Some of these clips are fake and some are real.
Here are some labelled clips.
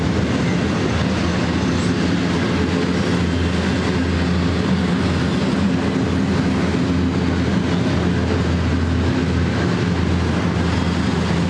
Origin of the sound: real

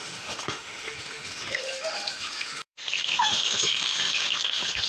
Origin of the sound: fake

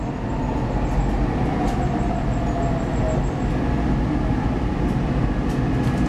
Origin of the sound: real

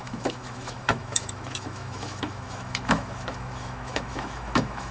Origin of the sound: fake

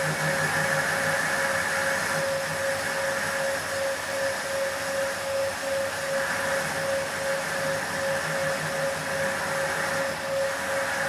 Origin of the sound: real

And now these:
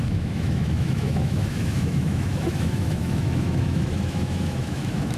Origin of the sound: fake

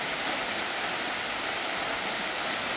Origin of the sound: real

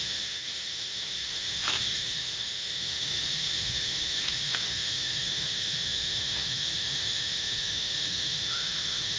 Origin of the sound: fake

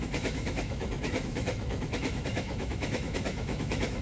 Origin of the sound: fake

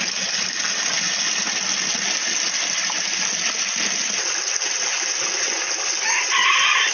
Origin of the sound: real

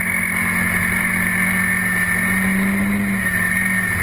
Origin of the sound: real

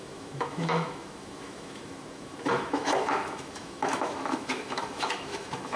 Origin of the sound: fake